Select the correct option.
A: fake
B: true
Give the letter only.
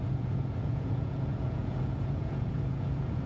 A